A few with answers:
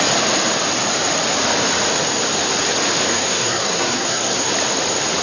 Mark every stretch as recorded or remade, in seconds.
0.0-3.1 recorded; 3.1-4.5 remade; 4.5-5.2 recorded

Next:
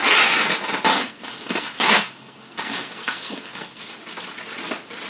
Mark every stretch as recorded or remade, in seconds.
0.0-0.9 recorded; 0.9-3.8 remade; 3.8-5.1 recorded

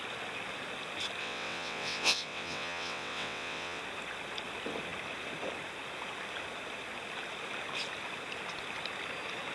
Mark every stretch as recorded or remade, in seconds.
0.0-1.2 recorded; 1.2-3.8 remade; 3.8-9.5 recorded